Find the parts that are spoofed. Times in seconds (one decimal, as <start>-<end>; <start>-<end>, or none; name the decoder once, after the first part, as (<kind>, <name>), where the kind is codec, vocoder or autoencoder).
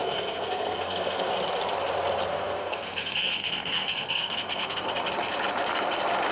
0.0-1.3 (codec, SNAC); 2.3-4.9